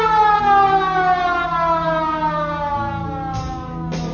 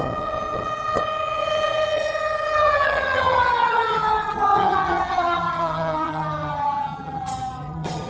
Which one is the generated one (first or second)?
second